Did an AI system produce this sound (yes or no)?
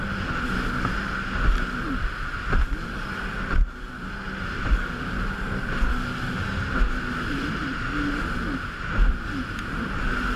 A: no